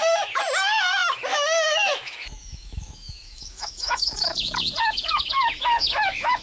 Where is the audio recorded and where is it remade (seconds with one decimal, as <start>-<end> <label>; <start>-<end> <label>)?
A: 0.0-6.4 remade